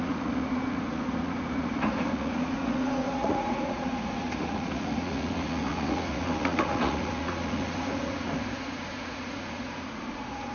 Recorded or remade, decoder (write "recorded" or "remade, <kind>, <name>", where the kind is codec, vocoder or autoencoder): remade, vocoder, Vocos